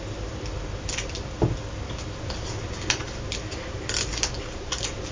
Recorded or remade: recorded